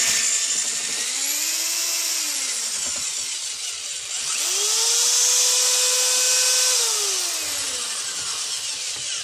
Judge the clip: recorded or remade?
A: recorded